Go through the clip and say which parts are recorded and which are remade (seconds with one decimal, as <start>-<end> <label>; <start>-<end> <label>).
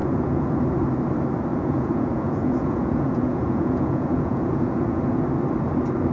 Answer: 0.0-0.6 remade; 0.6-1.5 recorded; 1.5-5.2 remade; 5.2-6.1 recorded